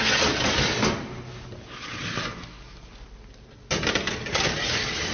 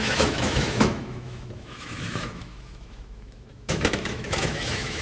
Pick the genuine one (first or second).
first